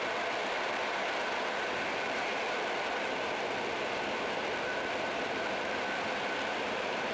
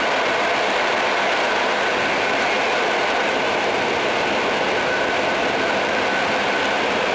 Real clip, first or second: second